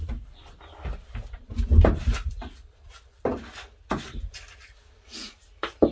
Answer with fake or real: fake